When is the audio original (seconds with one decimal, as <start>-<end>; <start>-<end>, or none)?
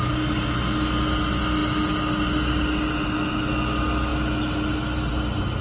0.0-5.6